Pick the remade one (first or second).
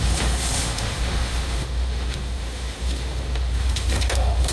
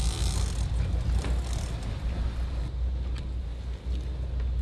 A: first